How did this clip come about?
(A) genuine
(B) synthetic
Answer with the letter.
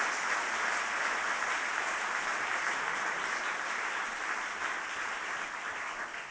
A